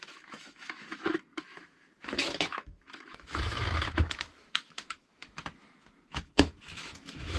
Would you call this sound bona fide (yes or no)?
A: no